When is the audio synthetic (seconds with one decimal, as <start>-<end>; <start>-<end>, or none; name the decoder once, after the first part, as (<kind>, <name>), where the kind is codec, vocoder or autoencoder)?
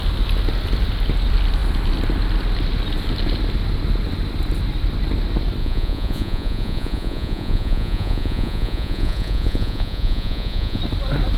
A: 5.6-10.8 (vocoder, Vocos)